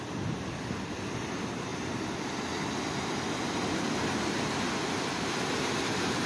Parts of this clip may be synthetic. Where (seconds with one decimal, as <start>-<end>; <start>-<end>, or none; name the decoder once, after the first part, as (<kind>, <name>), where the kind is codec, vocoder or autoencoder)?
none